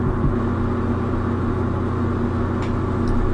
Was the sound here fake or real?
real